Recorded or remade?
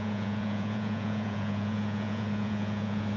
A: remade